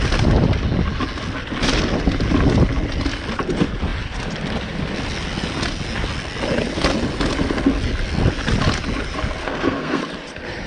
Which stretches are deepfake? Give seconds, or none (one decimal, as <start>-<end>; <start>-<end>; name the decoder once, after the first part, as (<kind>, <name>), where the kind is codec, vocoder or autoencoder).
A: 9.4-10.0 (codec, SNAC)